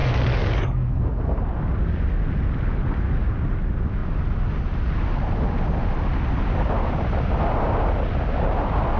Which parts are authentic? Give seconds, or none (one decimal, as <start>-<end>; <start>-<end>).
1.4-9.0